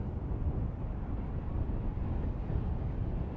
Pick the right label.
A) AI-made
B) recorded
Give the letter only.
B